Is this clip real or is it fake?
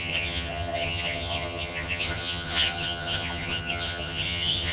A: fake